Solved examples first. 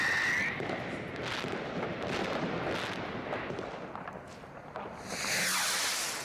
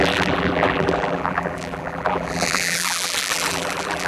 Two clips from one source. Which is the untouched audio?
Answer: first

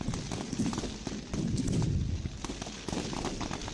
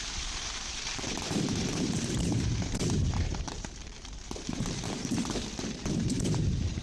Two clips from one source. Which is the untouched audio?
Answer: first